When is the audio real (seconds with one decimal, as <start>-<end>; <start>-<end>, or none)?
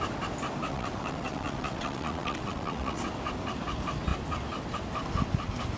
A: 0.0-0.7; 3.0-5.8